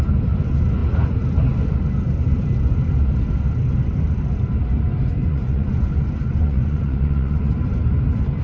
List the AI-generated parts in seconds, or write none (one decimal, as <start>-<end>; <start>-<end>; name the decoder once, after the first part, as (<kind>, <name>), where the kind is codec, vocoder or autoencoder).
5.2-7.5 (vocoder, Vocos)